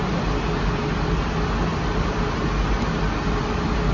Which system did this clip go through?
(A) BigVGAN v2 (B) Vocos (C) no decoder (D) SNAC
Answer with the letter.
C